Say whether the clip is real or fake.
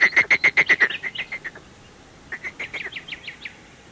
real